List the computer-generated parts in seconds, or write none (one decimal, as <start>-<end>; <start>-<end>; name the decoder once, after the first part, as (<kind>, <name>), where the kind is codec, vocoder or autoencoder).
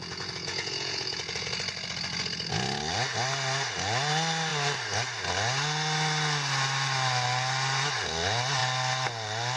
0.0-1.5 (vocoder, Vocos)